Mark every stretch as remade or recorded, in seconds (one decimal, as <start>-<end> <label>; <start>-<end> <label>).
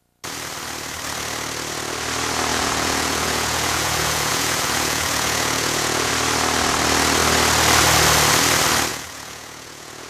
0.0-2.5 recorded; 2.5-6.1 remade; 6.1-8.9 recorded; 8.9-10.1 remade